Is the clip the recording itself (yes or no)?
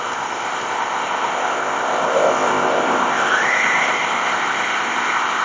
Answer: no